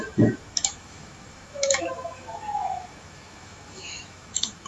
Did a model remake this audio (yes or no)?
yes